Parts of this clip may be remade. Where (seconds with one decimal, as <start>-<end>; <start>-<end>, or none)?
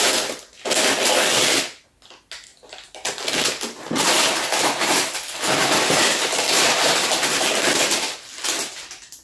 none